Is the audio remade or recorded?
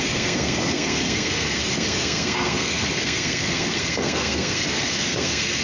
remade